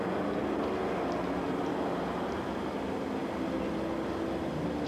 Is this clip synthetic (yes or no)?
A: no